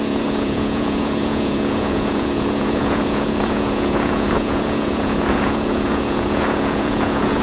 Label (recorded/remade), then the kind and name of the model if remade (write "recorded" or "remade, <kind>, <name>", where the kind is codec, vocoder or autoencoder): remade, vocoder, Vocos